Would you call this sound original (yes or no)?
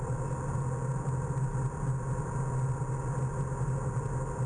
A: yes